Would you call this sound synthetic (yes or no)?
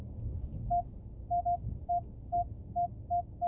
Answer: no